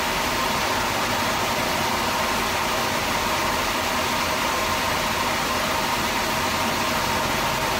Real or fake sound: real